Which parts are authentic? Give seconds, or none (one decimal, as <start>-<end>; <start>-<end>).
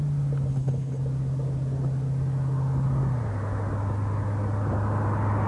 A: 0.0-0.5; 1.0-5.5